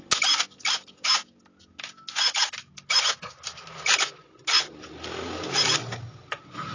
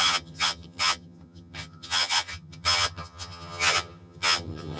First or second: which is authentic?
first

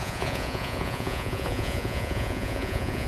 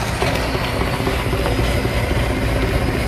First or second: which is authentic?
second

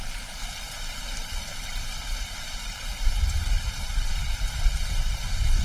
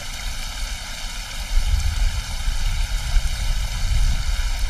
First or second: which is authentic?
second